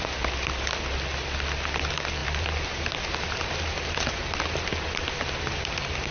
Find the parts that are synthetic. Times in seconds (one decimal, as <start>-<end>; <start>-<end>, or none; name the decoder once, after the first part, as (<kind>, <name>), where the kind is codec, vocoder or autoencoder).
2.2-3.5 (vocoder, BigVGAN v2)

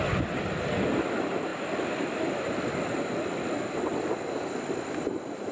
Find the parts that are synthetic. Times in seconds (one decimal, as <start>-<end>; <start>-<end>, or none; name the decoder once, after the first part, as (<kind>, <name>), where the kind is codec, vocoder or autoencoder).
none